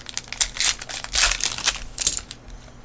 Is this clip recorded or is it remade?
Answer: recorded